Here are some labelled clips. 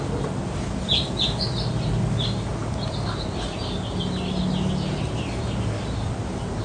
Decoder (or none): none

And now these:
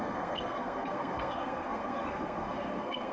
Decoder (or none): codec, SNAC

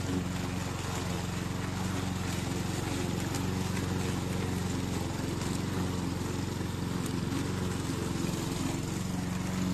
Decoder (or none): none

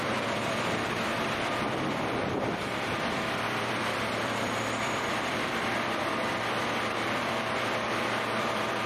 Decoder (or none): vocoder, BigVGAN v2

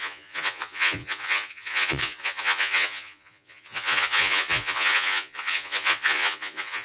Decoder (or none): vocoder, Vocos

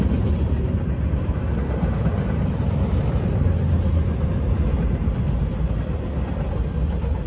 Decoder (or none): none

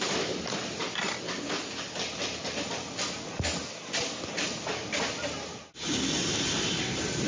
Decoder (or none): none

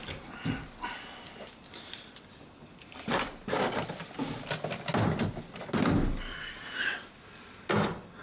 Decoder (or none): none